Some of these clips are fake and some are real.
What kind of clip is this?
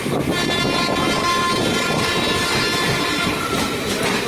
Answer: real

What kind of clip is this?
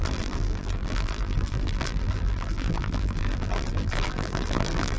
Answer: fake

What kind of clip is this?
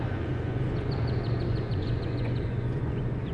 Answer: fake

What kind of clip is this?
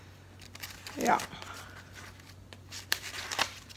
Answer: real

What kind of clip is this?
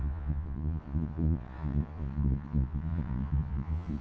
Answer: fake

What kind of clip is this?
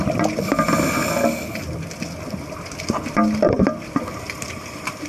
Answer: real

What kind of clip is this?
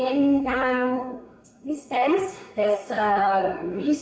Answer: fake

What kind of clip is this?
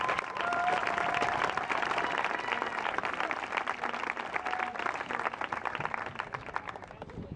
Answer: real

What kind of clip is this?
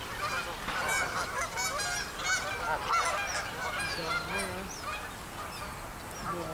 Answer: real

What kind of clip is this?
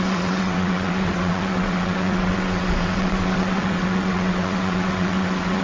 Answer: fake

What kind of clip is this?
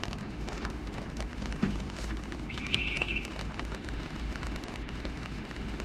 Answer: fake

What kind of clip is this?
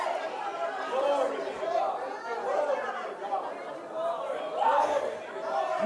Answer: fake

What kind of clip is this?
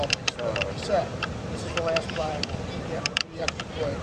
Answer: fake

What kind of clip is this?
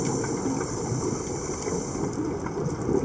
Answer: real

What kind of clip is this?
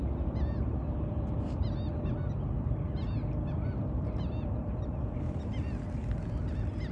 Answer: real